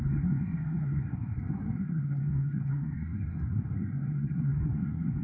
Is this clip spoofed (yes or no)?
yes